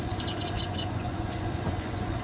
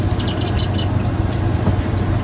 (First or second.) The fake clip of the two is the first